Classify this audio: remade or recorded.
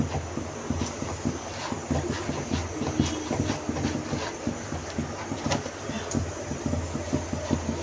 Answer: recorded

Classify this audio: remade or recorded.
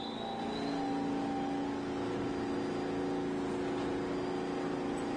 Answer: recorded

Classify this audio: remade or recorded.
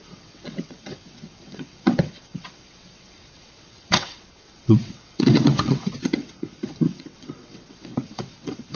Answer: remade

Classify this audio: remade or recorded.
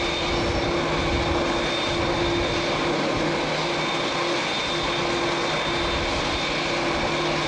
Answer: recorded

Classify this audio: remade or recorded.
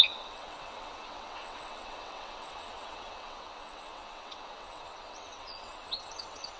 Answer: remade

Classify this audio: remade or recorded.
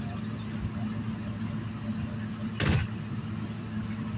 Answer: recorded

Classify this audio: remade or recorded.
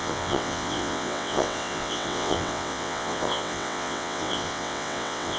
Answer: remade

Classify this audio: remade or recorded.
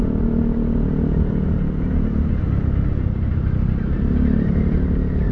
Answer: recorded